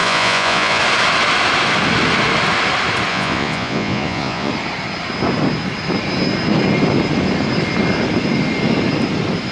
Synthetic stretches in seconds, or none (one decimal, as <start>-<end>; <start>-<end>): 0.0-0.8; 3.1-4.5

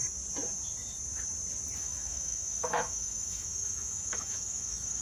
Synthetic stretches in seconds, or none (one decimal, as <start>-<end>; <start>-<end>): 1.8-5.0

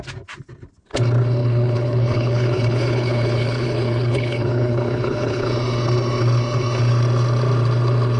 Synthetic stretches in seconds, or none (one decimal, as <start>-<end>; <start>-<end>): 1.4-5.5

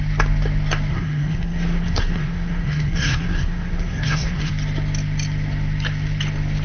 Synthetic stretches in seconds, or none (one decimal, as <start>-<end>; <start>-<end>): 0.9-4.5

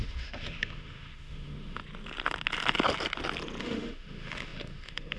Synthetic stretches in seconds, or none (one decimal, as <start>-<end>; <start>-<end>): 0.0-1.8; 3.6-5.2